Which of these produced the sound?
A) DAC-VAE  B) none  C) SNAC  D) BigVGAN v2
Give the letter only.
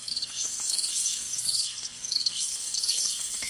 C